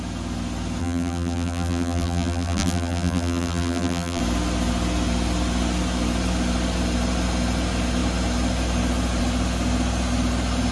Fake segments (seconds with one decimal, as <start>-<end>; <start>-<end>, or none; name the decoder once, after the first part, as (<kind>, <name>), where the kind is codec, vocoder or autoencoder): 0.8-4.2 (vocoder, BigVGAN v2)